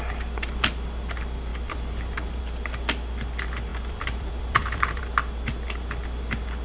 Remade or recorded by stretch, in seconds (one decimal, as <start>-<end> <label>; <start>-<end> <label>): 0.0-1.5 recorded; 1.5-2.4 remade; 2.4-3.7 recorded; 3.7-5.0 remade; 5.0-6.6 recorded